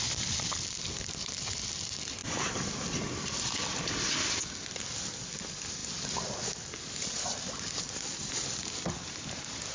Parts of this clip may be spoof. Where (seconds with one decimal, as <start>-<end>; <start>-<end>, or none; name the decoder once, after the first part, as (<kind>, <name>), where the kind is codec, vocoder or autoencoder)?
none